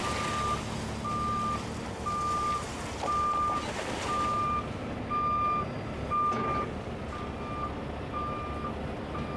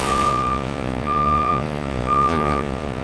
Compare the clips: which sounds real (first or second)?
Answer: first